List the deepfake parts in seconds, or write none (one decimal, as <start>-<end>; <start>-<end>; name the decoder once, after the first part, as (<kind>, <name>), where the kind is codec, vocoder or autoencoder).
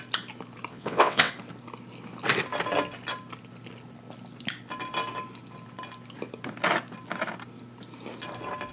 0.7-1.3 (vocoder, WaveNeXt)